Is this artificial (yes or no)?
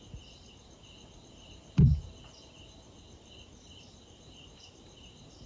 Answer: no